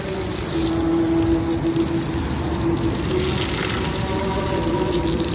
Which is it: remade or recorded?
recorded